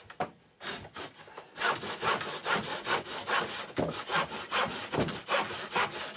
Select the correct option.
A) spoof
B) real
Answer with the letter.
B